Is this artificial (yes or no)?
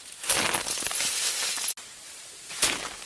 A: no